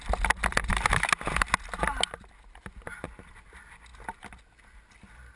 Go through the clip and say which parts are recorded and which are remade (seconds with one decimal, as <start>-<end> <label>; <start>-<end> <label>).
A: 0.0-5.4 recorded